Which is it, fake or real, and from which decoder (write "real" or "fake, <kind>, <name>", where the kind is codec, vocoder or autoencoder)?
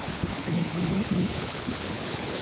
fake, codec, HILCodec